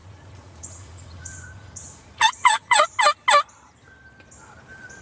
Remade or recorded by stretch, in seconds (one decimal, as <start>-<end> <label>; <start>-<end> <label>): 0.0-3.0 remade; 3.0-5.0 recorded